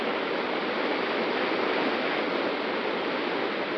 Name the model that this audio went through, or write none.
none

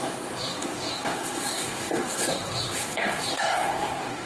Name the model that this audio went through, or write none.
codec, SNAC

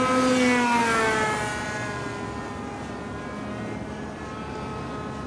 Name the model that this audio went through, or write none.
none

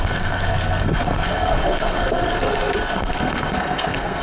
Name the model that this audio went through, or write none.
codec, SNAC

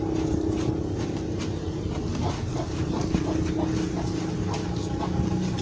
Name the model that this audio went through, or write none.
none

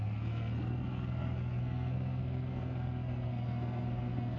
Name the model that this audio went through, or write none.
codec, SNAC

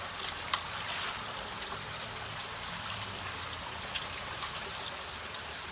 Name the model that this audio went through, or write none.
none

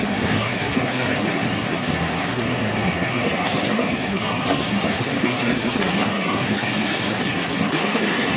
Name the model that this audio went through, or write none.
codec, SNAC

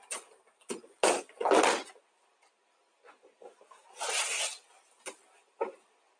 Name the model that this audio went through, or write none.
none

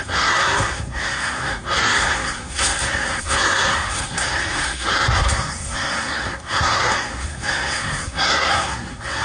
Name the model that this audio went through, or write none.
codec, SNAC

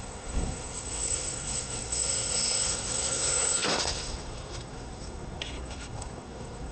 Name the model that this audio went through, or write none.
codec, SNAC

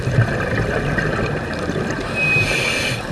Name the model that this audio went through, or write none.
none